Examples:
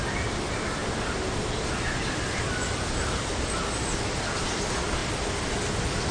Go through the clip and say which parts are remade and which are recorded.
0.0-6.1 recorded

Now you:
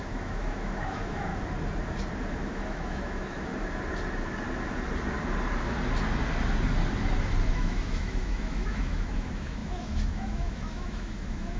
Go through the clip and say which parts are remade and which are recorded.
0.0-1.3 remade; 1.3-2.3 recorded; 2.3-3.5 remade; 3.5-7.5 recorded; 7.5-11.6 remade

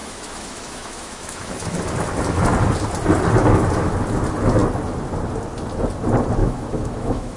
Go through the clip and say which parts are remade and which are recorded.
0.0-1.8 remade; 1.8-6.4 recorded; 6.4-7.4 remade

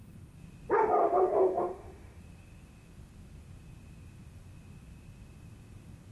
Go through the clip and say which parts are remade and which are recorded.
0.0-1.0 recorded; 1.0-2.2 remade; 2.2-6.1 recorded